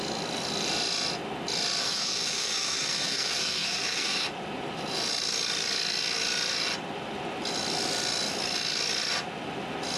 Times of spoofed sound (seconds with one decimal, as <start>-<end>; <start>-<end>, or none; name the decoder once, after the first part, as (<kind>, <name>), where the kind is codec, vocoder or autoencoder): 1.8-4.3 (codec, SNAC)